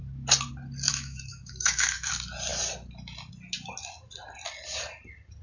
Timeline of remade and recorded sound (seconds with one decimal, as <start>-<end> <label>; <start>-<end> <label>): 0.0-0.9 recorded; 0.9-2.1 remade; 2.1-5.4 recorded